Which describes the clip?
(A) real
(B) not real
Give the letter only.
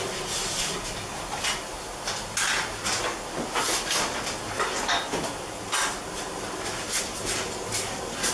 A